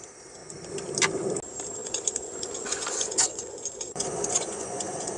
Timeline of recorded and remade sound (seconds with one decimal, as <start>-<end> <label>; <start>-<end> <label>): 0.0-1.8 recorded; 1.8-5.2 remade